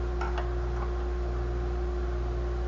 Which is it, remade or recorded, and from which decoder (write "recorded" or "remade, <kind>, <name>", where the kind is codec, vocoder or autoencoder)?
recorded